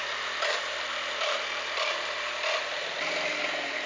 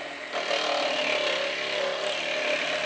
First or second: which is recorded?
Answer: second